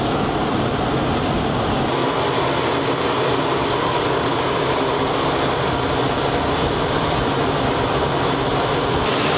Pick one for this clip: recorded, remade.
recorded